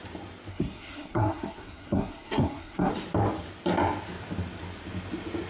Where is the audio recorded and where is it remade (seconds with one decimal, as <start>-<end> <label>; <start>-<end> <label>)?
0.0-0.5 recorded; 0.5-2.9 remade; 2.9-5.5 recorded